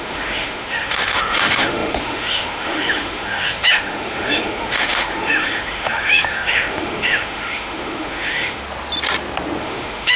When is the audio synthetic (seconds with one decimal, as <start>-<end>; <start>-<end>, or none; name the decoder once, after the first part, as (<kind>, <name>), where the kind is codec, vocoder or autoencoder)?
0.0-8.6 (autoencoder, DAC-VAE); 9.6-10.2